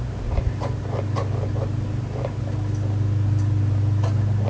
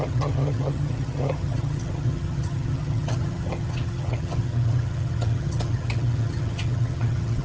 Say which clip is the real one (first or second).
first